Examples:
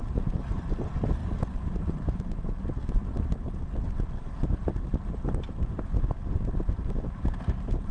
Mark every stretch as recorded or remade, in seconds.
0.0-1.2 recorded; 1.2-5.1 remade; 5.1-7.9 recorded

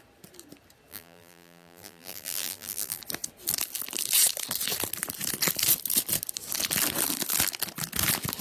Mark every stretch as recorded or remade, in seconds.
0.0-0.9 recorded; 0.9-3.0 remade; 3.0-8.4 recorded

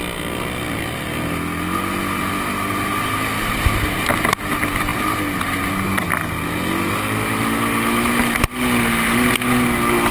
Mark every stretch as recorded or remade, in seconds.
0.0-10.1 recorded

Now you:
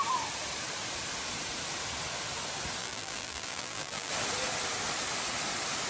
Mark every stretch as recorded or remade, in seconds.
0.0-2.8 recorded; 2.8-4.1 remade; 4.1-5.9 recorded

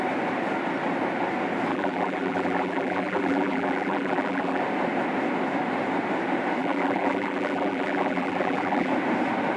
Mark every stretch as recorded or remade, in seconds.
0.0-1.7 recorded; 1.7-4.6 remade; 4.6-6.6 recorded; 6.6-8.9 remade; 8.9-9.6 recorded

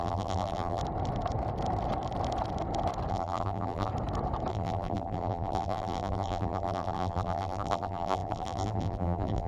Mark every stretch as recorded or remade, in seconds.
0.0-0.8 remade; 0.8-3.1 recorded; 3.1-3.9 remade; 3.9-4.5 recorded; 4.5-9.5 remade

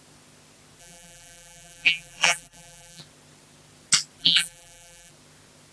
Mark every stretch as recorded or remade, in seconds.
0.0-0.8 recorded; 0.8-3.0 remade; 3.0-4.2 recorded; 4.2-5.1 remade; 5.1-5.7 recorded